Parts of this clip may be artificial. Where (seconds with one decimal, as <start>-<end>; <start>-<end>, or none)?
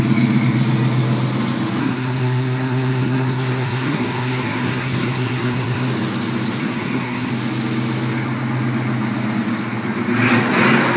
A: 1.8-5.9; 6.6-7.3